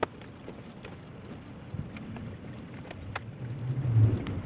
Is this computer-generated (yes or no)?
no